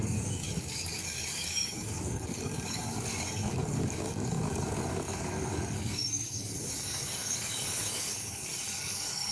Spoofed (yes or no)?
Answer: yes